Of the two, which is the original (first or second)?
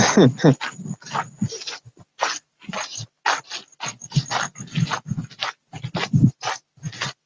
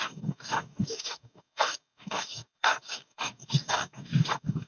first